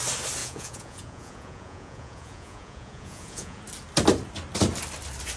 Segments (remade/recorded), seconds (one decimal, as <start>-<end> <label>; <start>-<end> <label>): 0.0-0.4 recorded; 0.4-3.6 remade; 3.6-5.4 recorded

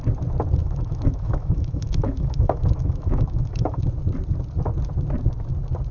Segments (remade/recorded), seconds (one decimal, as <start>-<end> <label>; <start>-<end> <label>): 0.0-0.6 recorded; 0.6-3.8 remade; 3.8-5.9 recorded

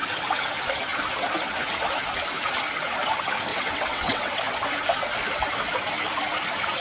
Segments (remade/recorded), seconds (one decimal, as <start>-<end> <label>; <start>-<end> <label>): 0.0-3.5 recorded; 3.5-4.4 remade; 4.4-6.8 recorded